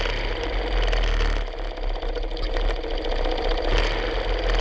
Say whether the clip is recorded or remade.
recorded